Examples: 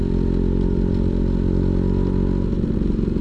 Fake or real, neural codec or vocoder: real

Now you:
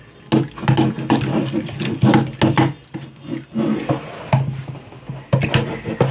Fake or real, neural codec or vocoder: real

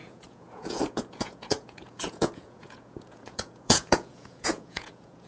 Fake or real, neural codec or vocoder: fake, vocoder, Vocos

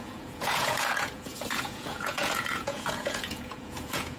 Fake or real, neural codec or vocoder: fake, vocoder, Vocos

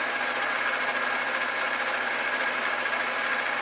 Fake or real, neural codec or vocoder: real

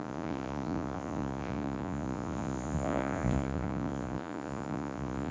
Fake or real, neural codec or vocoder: fake, vocoder, Vocos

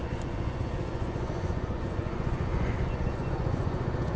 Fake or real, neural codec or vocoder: fake, vocoder, Vocos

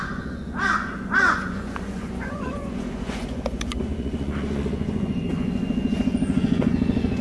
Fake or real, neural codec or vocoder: fake, vocoder, Vocos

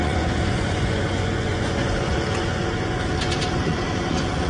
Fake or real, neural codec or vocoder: fake, vocoder, Vocos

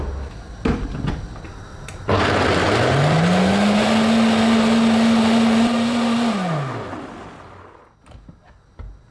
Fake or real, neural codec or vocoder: real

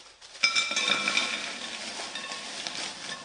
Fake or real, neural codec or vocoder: real